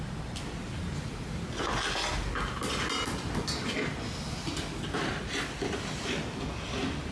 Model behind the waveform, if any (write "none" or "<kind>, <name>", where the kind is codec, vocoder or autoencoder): none